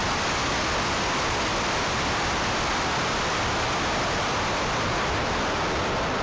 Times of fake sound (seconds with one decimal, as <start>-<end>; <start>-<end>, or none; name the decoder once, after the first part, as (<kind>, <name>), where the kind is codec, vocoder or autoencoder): 0.6-6.2 (vocoder, BigVGAN v2)